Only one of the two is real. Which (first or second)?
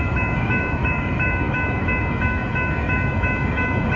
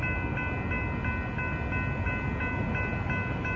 second